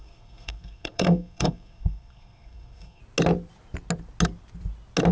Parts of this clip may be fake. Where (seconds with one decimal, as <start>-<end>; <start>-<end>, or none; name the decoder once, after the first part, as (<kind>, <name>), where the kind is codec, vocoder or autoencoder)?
0.0-3.0 (codec, SNAC)